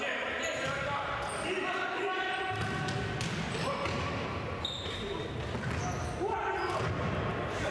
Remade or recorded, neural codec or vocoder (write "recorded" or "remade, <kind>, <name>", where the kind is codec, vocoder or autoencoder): recorded